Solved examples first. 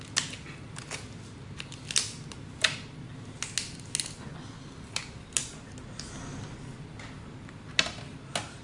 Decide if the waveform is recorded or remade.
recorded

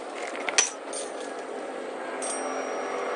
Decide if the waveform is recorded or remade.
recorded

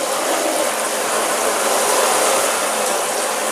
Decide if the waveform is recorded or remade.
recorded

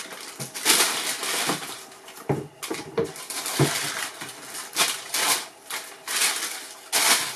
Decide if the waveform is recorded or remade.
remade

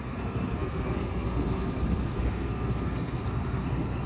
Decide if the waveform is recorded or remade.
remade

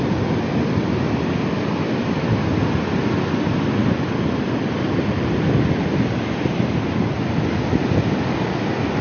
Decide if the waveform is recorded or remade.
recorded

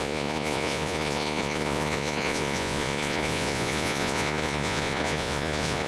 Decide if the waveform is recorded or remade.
remade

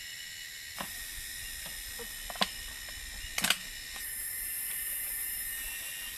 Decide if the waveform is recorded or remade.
recorded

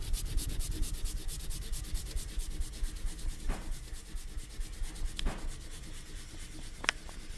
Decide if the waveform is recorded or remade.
recorded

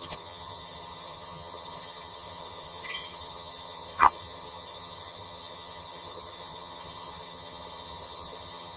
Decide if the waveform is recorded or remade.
remade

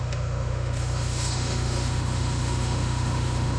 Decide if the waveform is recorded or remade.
remade